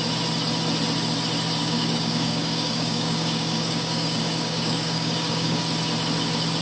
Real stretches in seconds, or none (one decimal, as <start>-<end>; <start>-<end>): 0.0-1.6; 5.6-6.6